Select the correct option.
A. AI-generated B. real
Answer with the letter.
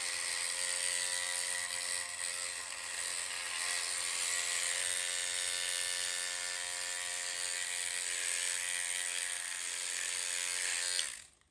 B